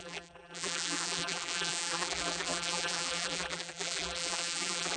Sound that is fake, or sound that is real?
fake